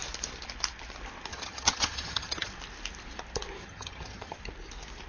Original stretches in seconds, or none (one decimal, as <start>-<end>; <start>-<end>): 0.0-1.3; 2.5-3.6; 4.4-5.1